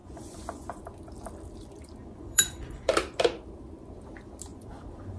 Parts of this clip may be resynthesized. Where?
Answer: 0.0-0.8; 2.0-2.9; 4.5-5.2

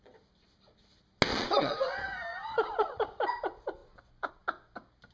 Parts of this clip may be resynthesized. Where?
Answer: 1.3-3.2

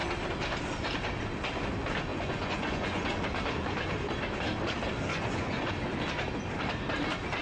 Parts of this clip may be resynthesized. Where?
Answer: 2.1-3.1; 5.1-5.7